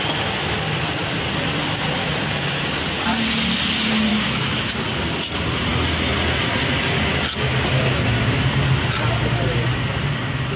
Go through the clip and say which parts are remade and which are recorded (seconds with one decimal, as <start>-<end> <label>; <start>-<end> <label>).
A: 0.0-2.0 recorded; 2.0-2.6 remade; 2.6-4.1 recorded; 4.1-4.7 remade; 4.7-10.6 recorded